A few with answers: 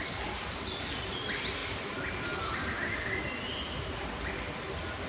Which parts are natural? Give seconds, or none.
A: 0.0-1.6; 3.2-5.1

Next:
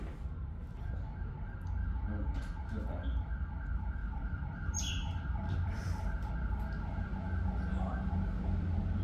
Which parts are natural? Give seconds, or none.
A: 0.0-4.0; 6.3-9.0